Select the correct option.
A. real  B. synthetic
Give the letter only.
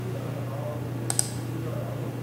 A